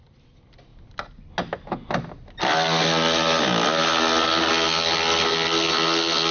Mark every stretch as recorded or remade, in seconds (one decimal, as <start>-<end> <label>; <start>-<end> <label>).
0.0-6.3 recorded